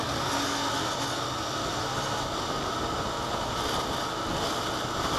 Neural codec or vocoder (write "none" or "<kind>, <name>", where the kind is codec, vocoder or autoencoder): none